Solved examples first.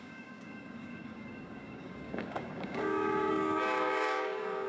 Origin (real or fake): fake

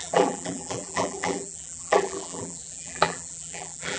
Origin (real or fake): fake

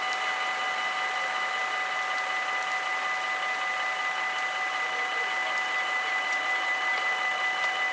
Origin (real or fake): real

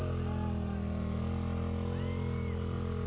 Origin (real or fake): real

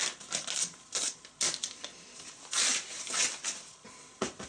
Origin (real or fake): real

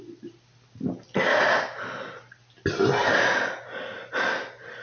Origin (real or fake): real